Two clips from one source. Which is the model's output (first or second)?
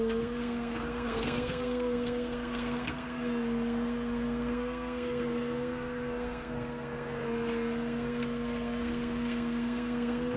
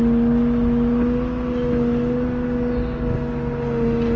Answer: first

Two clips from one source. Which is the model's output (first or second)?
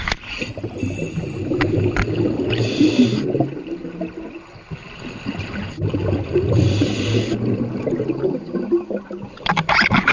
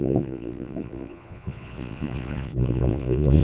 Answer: second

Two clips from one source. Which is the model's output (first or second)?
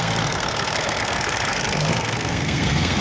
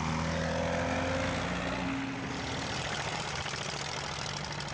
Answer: first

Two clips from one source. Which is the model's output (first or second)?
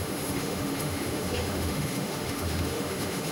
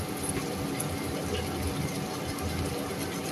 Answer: first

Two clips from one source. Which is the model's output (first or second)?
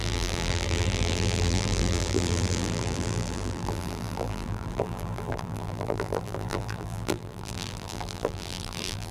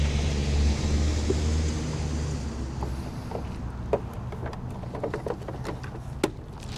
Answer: first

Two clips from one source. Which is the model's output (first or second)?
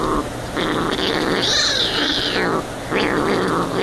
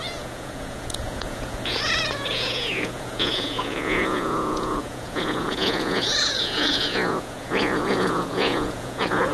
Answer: second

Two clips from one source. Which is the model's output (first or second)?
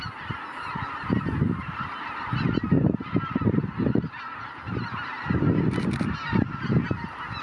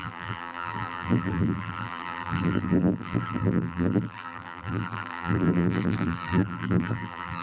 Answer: second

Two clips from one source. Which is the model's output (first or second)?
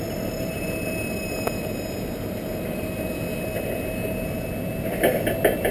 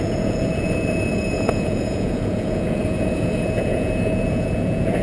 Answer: second